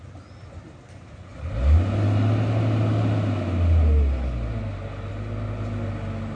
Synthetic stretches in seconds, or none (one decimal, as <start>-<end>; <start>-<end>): none